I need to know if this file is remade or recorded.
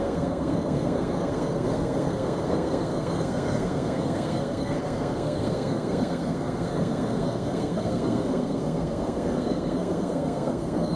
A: remade